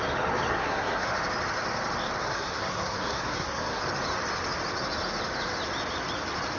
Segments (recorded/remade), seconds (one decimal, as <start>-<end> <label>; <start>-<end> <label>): 0.0-0.5 recorded; 0.5-1.1 remade; 1.1-2.2 recorded; 2.2-3.8 remade; 3.8-6.6 recorded